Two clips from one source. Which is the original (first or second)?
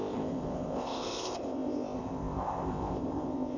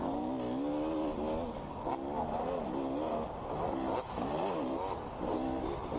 second